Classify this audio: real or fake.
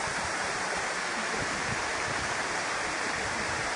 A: fake